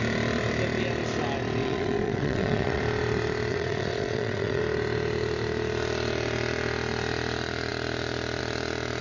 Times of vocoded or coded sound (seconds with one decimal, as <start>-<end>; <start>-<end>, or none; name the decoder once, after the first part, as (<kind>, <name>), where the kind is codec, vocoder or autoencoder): 1.6-2.8 (vocoder, WaveNeXt); 3.5-4.6

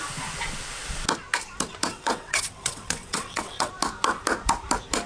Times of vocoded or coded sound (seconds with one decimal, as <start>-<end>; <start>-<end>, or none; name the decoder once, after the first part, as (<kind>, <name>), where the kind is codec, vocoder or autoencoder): 1.9-3.7 (vocoder, WaveNeXt)

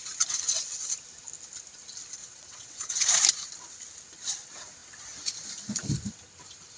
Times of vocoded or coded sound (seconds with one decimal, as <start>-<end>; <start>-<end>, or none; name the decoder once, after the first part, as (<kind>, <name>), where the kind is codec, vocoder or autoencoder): 2.2-3.2 (vocoder, WaveNeXt)

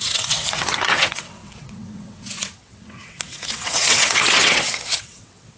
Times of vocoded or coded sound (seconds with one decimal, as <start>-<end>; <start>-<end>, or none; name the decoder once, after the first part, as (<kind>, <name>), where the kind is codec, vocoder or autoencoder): 0.0-5.6 (vocoder, WaveNeXt)

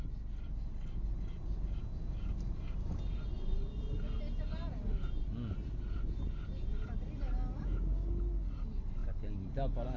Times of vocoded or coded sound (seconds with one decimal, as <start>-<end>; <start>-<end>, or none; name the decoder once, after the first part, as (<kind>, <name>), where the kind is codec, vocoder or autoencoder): none

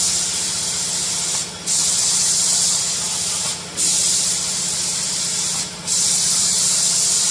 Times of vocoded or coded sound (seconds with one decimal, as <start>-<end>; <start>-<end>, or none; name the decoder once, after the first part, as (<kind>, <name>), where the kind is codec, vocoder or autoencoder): none

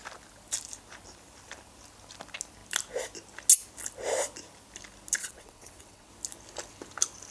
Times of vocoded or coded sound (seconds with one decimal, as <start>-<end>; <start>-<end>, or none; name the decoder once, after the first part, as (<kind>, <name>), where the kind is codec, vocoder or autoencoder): 5.2-6.1 (vocoder, WaveNeXt)

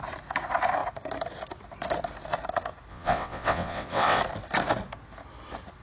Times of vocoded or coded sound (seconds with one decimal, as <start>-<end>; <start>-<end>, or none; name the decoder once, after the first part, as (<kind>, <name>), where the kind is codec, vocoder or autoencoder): 2.9-4.2 (vocoder, WaveNeXt)